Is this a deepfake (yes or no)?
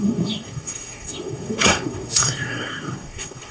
yes